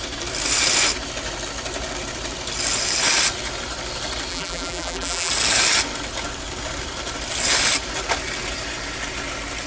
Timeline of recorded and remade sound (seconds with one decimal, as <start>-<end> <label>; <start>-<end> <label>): 0.0-4.3 recorded; 4.3-5.3 remade; 5.3-9.7 recorded